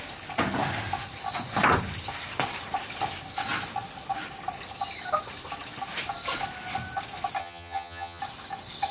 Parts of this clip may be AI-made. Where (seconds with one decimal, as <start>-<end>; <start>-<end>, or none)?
7.4-8.2